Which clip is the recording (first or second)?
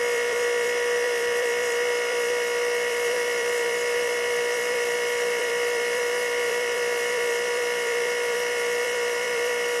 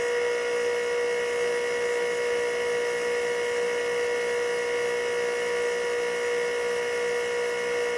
second